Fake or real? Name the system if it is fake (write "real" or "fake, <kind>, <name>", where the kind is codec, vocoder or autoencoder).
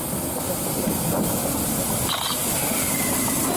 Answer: fake, vocoder, BigVGAN v2